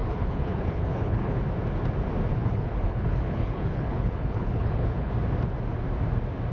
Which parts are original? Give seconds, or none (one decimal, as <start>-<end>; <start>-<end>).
1.4-2.3; 5.1-6.5